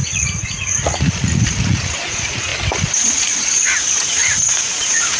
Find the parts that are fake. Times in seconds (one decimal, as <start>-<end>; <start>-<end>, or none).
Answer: 0.0-2.5; 3.1-5.2